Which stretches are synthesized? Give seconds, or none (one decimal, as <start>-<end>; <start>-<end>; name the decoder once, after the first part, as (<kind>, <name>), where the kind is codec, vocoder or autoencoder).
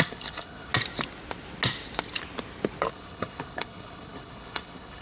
0.0-0.7 (codec, HILCodec); 2.9-5.0